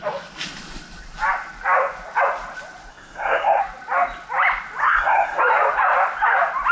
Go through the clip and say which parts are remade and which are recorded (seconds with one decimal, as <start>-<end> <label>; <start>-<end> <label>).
0.0-2.9 recorded; 2.9-3.6 remade; 3.6-4.8 recorded; 4.8-5.4 remade; 5.4-6.7 recorded